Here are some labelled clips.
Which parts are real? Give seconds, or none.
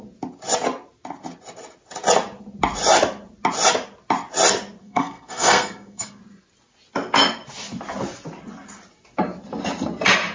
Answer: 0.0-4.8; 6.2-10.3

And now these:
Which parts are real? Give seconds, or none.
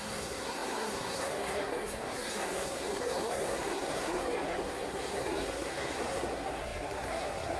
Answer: none